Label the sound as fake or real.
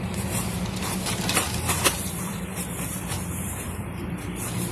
fake